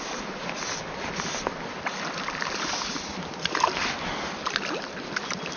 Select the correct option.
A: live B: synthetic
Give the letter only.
A